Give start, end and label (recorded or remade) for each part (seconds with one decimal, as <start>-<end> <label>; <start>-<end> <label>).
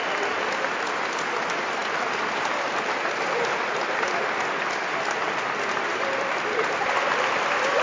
0.0-7.8 remade